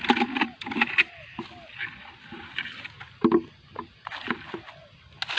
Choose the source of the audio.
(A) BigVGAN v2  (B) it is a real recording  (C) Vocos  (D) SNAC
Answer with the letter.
B